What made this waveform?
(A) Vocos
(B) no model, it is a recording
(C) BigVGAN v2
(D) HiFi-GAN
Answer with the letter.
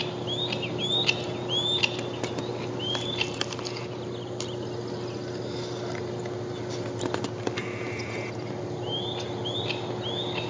B